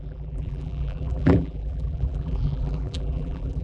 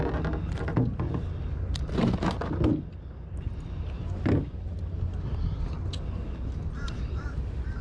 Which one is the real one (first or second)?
second